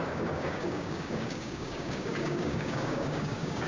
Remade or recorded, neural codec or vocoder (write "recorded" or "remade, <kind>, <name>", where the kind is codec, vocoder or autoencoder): remade, codec, DAC